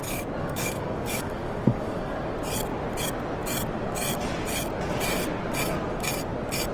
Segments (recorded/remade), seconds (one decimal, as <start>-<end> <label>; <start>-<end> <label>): 0.0-0.4 recorded; 0.4-2.2 remade; 2.2-6.7 recorded